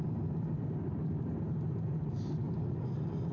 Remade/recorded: remade